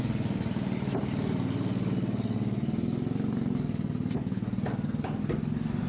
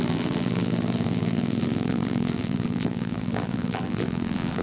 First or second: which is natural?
first